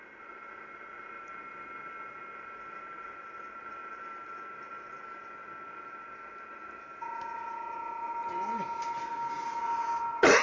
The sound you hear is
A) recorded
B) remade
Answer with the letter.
A